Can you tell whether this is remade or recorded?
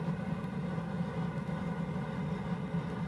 recorded